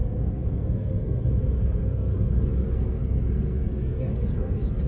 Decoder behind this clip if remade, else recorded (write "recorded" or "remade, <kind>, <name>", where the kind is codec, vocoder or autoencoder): remade, codec, SNAC